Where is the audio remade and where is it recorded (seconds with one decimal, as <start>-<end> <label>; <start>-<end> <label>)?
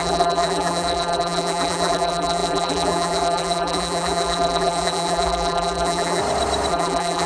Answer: 0.0-6.2 remade; 6.2-6.7 recorded; 6.7-7.3 remade